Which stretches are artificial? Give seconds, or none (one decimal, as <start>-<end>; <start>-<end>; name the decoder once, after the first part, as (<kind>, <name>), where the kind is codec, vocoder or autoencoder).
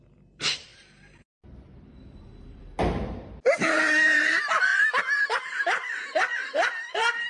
0.0-0.7 (vocoder, BigVGAN v2); 3.4-4.7; 5.4-7.3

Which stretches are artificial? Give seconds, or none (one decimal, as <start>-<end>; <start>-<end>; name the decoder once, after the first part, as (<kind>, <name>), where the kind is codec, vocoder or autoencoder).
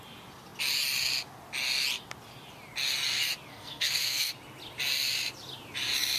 3.5-4.3 (codec, SNAC)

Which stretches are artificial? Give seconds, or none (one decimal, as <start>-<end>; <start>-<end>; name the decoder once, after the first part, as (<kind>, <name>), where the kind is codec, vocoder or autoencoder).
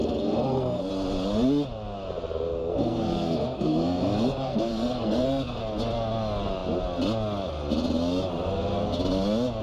0.0-0.9 (codec, SNAC); 2.6-5.6